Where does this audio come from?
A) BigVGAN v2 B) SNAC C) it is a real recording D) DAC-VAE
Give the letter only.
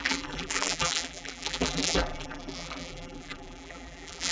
A